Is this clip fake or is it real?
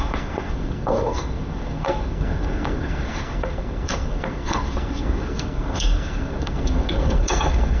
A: fake